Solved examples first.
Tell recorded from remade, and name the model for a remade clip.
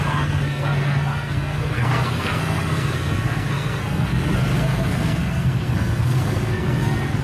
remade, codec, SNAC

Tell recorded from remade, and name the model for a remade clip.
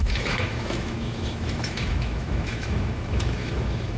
remade, autoencoder, DAC-VAE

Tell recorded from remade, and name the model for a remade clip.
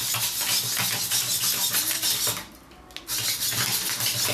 recorded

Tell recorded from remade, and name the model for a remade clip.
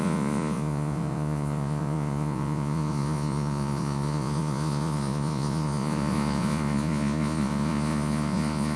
remade, vocoder, Vocos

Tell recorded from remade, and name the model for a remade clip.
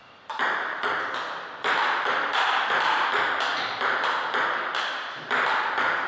recorded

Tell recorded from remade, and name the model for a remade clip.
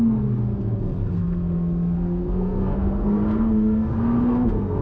remade, codec, SNAC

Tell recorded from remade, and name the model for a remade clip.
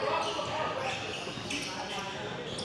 recorded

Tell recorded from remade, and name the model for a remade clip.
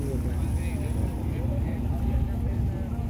recorded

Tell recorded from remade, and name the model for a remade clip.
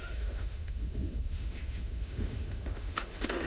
remade, autoencoder, DAC-VAE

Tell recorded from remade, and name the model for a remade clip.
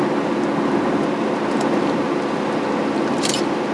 recorded